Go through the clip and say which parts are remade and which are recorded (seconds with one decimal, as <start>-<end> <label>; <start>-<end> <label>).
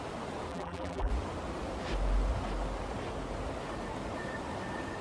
0.0-0.5 recorded; 0.5-1.1 remade; 1.1-5.0 recorded